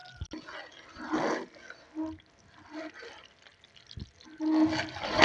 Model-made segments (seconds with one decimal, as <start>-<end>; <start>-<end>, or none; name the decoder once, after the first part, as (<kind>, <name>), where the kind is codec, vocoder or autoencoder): none